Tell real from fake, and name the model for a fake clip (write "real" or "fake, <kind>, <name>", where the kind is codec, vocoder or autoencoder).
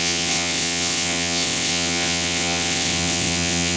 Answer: fake, vocoder, WaveNeXt